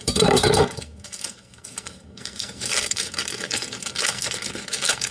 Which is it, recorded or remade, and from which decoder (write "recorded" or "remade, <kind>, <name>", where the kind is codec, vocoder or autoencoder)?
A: remade, codec, SNAC